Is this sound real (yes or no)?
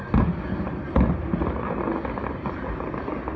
yes